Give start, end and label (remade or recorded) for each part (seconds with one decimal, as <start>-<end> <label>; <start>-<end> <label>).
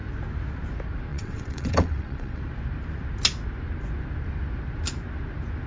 0.0-1.1 recorded; 1.1-2.4 remade; 2.4-5.7 recorded